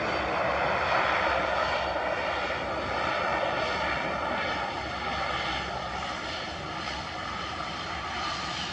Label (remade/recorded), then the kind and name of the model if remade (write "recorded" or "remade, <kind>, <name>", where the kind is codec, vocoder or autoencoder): recorded